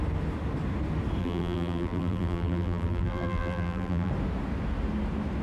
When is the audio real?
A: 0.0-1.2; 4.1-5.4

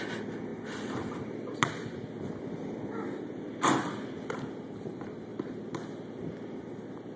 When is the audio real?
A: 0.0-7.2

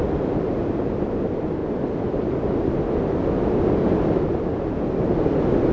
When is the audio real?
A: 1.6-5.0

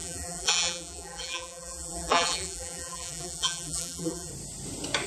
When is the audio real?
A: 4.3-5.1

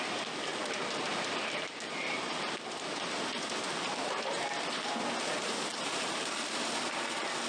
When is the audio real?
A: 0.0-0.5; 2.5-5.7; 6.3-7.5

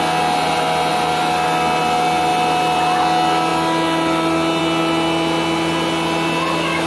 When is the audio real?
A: 0.0-6.9